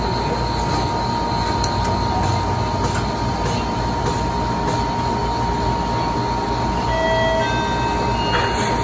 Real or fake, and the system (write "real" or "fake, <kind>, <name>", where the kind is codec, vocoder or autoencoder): real